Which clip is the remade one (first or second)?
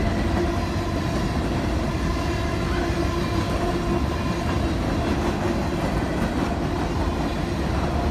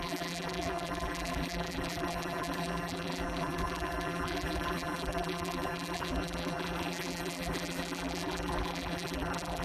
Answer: second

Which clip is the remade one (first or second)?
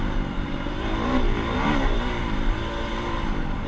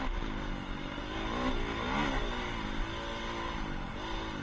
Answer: first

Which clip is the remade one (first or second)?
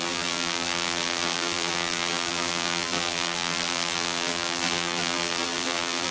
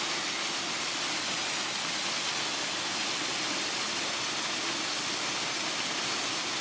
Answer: first